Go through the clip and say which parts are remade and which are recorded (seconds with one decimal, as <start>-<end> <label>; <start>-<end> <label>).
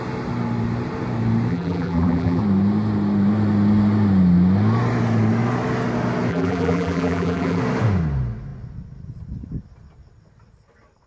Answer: 0.0-1.5 recorded; 1.5-2.4 remade; 2.4-6.3 recorded; 6.3-7.6 remade; 7.6-11.1 recorded